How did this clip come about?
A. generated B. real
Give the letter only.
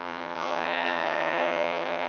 A